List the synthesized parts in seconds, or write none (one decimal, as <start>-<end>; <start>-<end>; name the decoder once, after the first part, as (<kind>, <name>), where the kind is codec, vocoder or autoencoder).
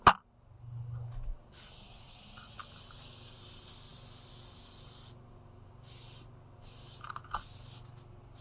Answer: 1.9-2.6 (vocoder, Vocos)